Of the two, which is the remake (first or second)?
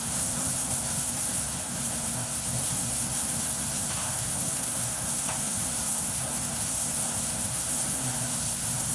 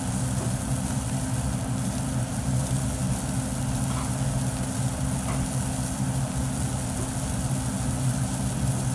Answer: first